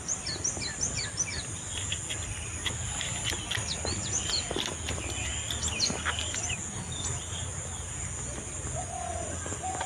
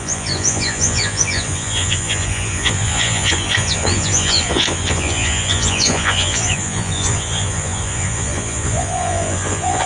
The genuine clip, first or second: first